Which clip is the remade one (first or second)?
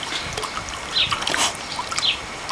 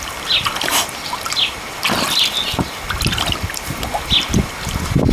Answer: second